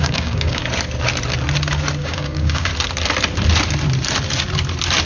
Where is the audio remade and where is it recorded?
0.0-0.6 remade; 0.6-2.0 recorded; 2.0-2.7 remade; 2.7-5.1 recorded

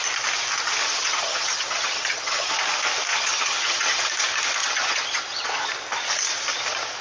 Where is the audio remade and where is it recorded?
0.0-0.8 recorded; 0.8-2.5 remade; 2.5-3.1 recorded; 3.1-4.0 remade; 4.0-4.6 recorded; 4.6-5.7 remade; 5.7-7.0 recorded